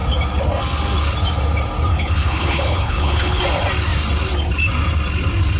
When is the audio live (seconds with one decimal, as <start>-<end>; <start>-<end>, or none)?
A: 0.0-1.9; 3.4-5.6